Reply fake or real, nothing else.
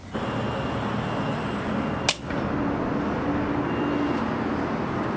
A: real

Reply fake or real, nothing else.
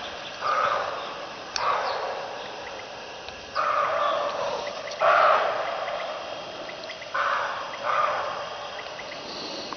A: real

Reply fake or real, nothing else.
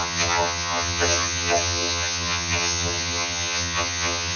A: fake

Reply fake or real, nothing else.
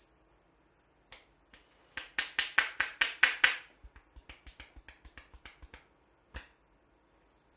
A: real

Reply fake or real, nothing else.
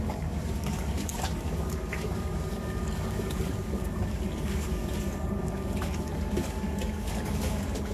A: fake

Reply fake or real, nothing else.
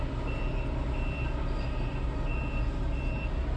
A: real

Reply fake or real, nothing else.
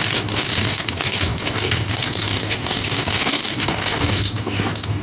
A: fake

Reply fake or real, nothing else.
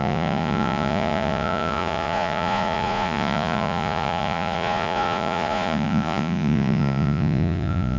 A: fake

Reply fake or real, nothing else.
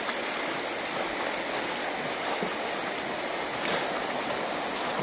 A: real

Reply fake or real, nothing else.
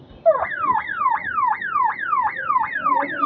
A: real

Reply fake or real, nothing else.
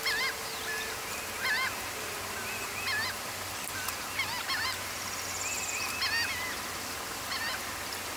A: real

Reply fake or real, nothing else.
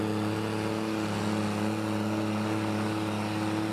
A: real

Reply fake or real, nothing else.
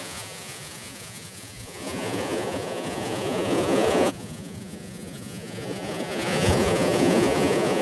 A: fake